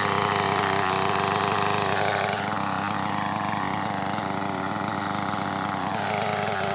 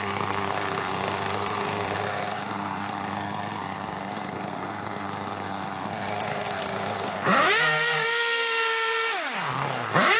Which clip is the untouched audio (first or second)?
first